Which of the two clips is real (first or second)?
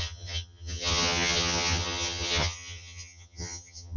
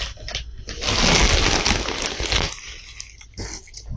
second